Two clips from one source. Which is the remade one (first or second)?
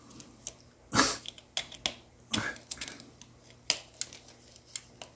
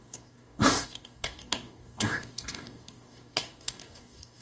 second